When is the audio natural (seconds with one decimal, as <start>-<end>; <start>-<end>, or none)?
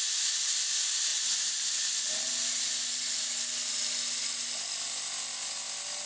0.0-6.1